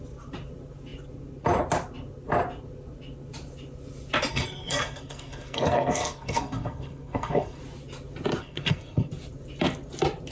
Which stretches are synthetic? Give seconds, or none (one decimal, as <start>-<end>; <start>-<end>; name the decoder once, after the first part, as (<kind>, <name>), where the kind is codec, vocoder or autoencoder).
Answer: 4.3-7.6 (codec, SNAC); 8.4-9.1